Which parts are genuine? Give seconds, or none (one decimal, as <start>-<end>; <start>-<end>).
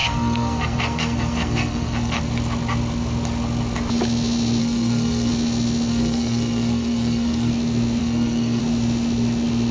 2.2-4.6; 5.3-5.9; 7.5-8.0; 8.6-9.7